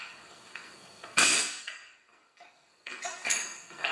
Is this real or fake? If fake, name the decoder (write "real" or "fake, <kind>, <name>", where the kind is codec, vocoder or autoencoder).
fake, codec, SNAC